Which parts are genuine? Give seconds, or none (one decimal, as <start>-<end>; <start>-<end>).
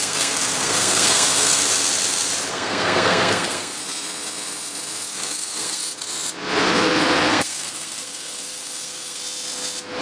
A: 1.6-2.5; 3.8-5.1; 5.8-7.3; 9.2-10.0